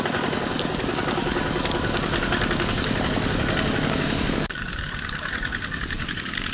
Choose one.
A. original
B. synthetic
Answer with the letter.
B